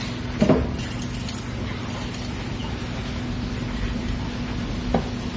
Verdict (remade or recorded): recorded